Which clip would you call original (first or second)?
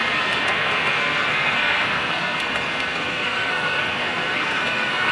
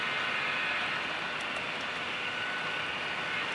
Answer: second